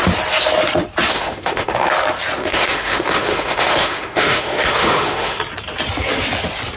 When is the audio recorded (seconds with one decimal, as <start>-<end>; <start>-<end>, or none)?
0.0-1.1; 1.9-2.4; 5.4-6.8

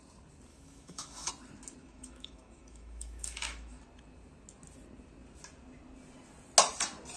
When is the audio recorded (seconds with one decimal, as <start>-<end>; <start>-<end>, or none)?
0.0-0.5; 1.3-1.8; 3.8-7.2

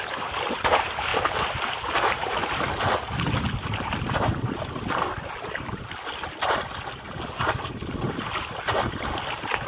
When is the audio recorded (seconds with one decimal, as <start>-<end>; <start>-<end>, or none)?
0.0-9.7

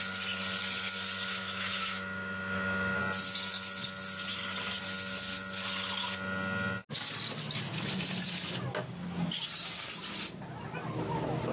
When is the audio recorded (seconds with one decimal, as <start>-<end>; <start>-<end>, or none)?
0.0-1.3; 3.0-11.5

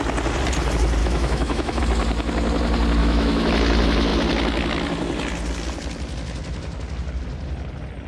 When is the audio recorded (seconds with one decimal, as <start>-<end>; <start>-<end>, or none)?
0.0-1.0; 1.8-3.0; 3.5-8.1

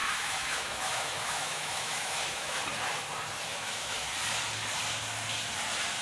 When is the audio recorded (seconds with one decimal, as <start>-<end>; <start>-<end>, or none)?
2.6-3.5; 4.1-6.0

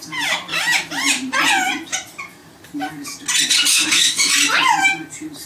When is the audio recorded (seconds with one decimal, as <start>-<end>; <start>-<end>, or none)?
0.0-3.7; 4.3-5.5

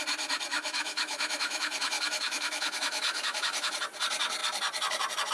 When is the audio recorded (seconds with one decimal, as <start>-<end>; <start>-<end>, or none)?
0.0-0.5; 3.7-5.3